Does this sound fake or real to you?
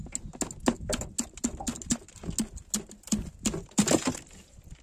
real